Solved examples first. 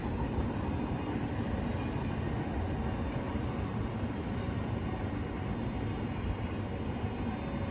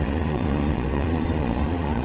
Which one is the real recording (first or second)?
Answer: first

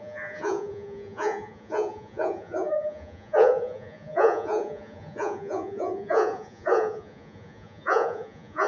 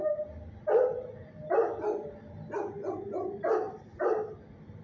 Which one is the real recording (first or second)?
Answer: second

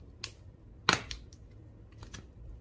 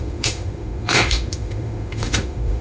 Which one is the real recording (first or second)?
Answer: first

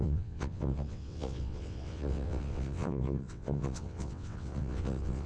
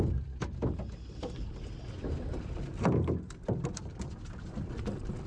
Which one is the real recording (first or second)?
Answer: second